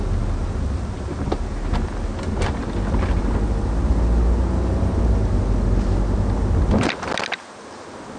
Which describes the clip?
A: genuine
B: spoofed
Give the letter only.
A